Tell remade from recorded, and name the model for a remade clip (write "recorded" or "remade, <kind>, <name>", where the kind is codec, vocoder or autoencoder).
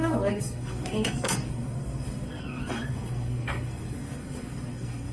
remade, codec, SNAC